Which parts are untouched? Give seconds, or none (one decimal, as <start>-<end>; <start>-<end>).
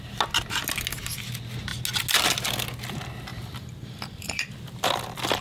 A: 0.0-3.3; 4.9-5.4